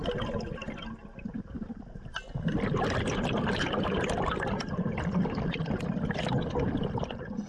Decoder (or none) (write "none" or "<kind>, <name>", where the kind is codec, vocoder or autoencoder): vocoder, BigVGAN v2